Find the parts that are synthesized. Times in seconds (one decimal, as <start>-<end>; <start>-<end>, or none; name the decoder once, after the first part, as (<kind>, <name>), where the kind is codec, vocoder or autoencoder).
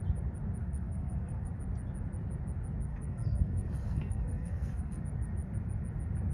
0.6-1.5 (codec, SNAC); 2.9-5.0